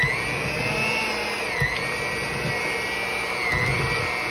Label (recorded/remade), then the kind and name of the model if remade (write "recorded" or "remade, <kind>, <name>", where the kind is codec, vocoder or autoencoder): recorded